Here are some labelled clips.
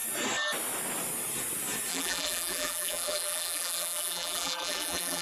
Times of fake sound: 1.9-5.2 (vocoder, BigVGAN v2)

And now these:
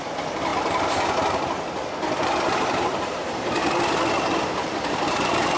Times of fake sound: 0.0-0.5 (vocoder, BigVGAN v2); 2.2-3.6; 4.5-5.6

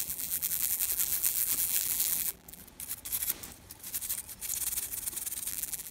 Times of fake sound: 0.0-2.6 (vocoder, BigVGAN v2); 5.5-5.9

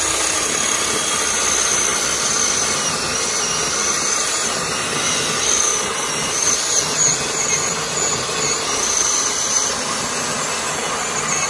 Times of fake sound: none

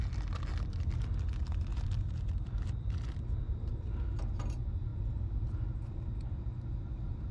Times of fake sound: none

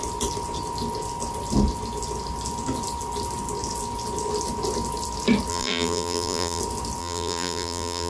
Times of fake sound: 5.5-6.6 (vocoder, BigVGAN v2); 7.0-8.1